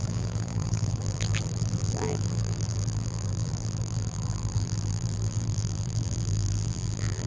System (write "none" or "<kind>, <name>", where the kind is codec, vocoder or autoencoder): vocoder, BigVGAN v2